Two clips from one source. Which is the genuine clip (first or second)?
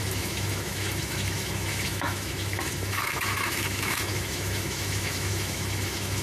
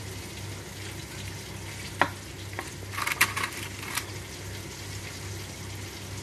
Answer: second